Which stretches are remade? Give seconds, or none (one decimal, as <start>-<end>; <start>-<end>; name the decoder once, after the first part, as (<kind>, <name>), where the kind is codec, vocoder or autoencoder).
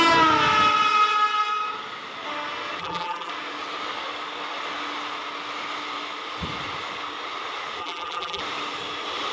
2.8-3.3 (vocoder, BigVGAN v2); 7.8-8.4